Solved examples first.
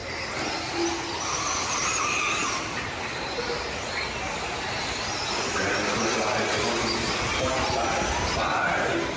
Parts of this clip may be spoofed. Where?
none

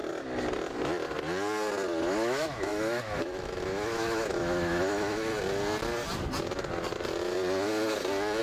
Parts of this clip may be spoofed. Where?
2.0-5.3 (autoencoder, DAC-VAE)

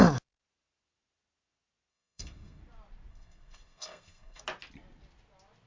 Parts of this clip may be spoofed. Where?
1.9-2.6 (codec, SNAC); 3.1-4.4